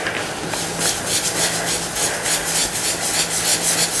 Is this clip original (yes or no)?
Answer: yes